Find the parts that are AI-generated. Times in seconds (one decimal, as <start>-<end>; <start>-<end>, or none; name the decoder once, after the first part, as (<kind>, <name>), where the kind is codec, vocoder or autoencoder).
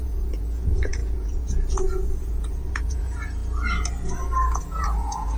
0.0-3.4 (vocoder, Vocos); 4.6-5.4